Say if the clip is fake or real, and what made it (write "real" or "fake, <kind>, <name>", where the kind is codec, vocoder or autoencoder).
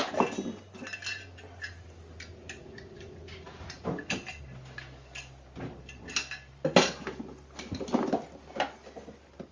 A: real